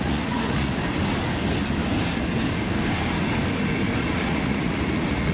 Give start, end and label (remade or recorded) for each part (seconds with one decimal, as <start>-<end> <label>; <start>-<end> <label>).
0.0-0.8 remade; 0.8-4.0 recorded; 4.0-5.3 remade